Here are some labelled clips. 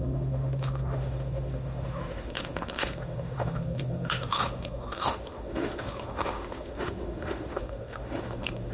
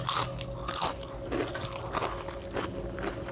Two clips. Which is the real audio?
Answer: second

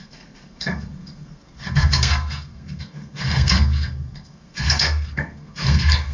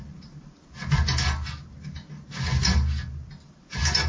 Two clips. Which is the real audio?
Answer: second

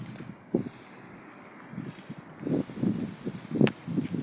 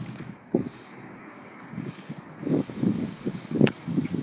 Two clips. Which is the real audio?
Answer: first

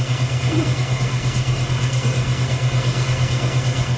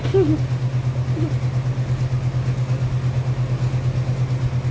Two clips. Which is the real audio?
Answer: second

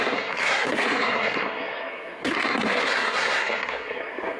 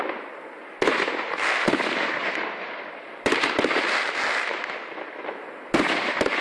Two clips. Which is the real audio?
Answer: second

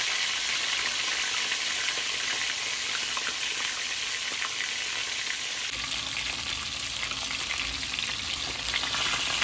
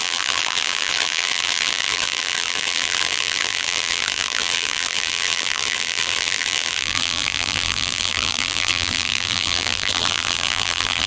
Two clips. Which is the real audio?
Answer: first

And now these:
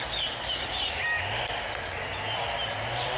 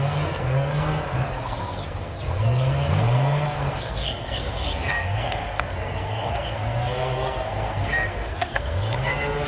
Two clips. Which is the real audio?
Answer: first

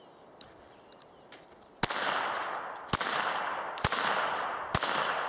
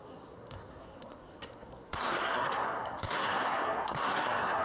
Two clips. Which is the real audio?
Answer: first